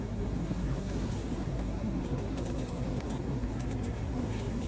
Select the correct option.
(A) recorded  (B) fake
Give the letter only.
B